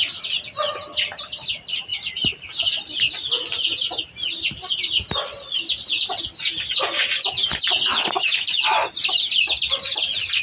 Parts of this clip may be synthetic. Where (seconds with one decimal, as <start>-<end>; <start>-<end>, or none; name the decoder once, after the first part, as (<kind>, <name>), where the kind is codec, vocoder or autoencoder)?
none